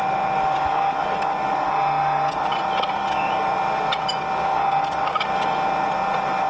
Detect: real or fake real